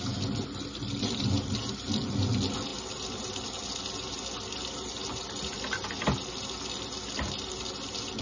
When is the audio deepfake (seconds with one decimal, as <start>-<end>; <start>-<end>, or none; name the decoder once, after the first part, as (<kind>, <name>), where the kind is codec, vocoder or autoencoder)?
none